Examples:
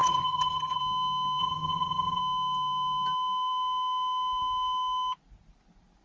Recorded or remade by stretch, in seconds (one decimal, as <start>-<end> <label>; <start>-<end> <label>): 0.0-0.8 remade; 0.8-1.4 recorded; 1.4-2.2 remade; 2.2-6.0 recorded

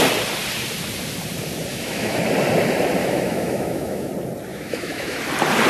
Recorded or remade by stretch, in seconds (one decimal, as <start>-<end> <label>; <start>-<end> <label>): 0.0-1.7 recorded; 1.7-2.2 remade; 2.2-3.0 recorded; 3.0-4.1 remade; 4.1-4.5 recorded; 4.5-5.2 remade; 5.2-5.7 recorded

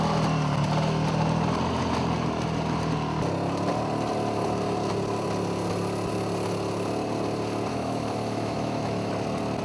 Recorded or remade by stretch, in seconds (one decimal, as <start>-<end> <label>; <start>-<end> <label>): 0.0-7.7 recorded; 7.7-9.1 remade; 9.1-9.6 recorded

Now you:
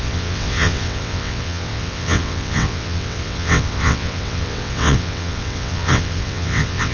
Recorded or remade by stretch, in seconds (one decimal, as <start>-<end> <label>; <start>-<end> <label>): 0.0-6.9 remade

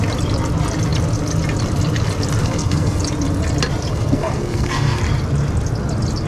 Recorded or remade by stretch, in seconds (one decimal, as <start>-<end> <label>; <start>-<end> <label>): 0.0-2.4 recorded; 2.4-3.0 remade; 3.0-3.9 recorded; 3.9-5.0 remade; 5.0-6.3 recorded

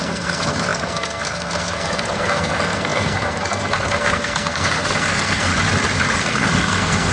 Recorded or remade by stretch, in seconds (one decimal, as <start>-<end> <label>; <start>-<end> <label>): 0.0-5.5 remade; 5.5-6.2 recorded; 6.2-7.1 remade

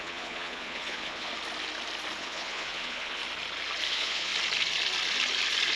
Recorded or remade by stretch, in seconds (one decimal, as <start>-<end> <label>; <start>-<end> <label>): 0.0-1.3 remade; 1.3-2.2 recorded; 2.2-3.2 remade; 3.2-3.9 recorded; 3.9-4.3 remade; 4.3-5.8 recorded

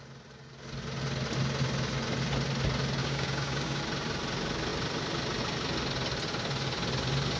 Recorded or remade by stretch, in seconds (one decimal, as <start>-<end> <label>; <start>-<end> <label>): 0.0-3.0 recorded; 3.0-3.8 remade; 3.8-7.4 recorded